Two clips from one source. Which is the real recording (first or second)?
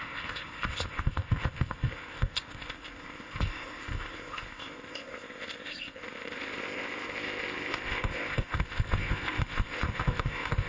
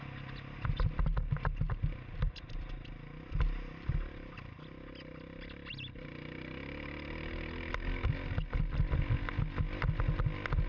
second